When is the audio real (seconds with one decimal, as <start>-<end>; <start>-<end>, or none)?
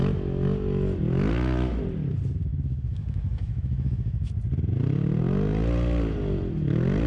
0.0-2.5; 4.3-7.1